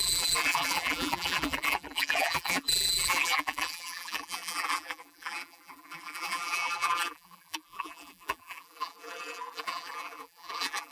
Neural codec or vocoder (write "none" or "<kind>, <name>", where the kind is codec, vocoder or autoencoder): vocoder, BigVGAN v2